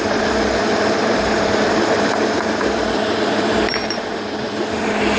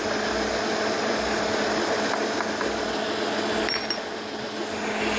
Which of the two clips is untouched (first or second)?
second